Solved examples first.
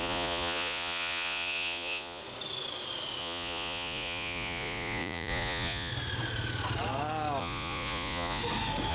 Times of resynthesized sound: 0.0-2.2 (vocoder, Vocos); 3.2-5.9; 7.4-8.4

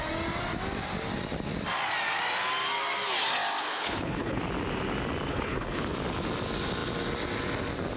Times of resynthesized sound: 3.6-4.4 (codec, HILCodec); 5.3-5.8

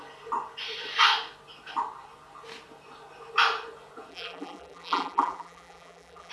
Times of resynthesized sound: 4.1-6.3 (vocoder, BigVGAN v2)

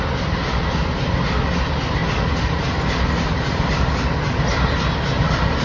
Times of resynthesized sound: 2.0-3.8 (vocoder, BigVGAN v2)

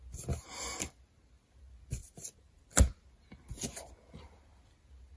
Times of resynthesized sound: 2.0-2.7 (vocoder, BigVGAN v2)

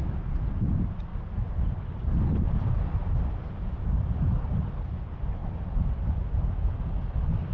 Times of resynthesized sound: none